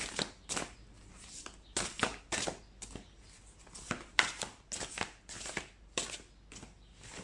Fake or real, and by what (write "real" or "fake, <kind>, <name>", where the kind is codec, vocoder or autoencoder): real